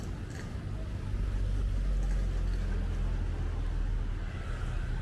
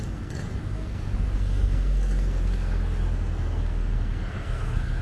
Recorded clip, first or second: first